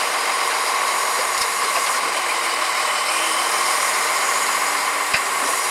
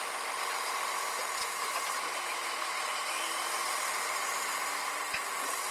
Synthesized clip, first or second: first